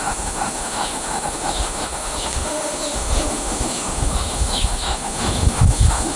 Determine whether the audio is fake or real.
fake